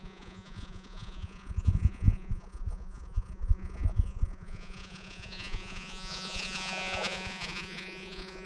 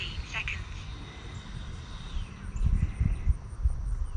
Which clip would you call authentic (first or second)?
second